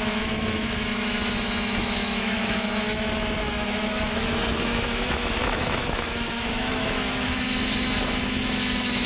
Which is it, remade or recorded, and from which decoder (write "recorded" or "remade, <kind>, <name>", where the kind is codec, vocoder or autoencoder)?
remade, autoencoder, DAC-VAE